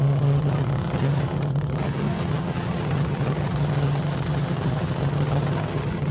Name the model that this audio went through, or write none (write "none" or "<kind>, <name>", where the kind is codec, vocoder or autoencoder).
vocoder, HiFi-GAN